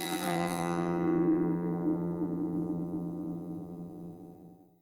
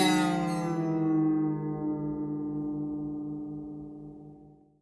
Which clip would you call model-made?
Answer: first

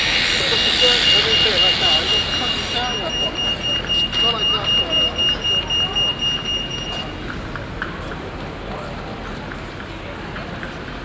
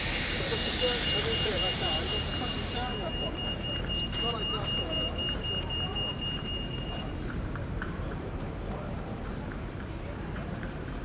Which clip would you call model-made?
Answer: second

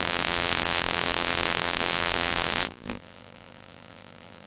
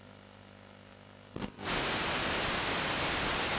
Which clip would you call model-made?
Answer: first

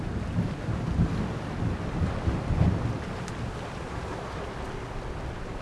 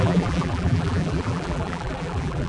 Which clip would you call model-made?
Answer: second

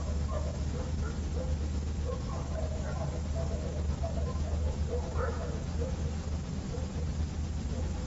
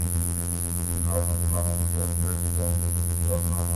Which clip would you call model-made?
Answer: second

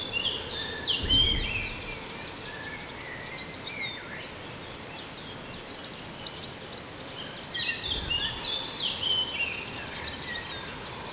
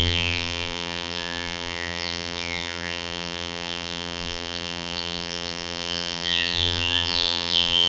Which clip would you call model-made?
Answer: second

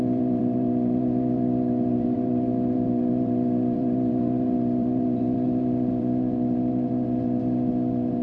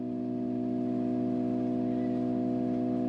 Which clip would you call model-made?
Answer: first